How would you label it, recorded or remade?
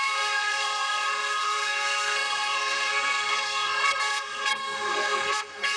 remade